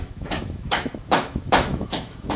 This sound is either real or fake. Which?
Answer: fake